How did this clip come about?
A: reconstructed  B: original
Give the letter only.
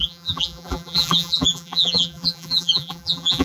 A